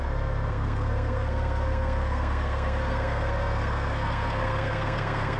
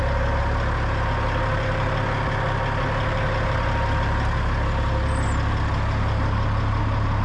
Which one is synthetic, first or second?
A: first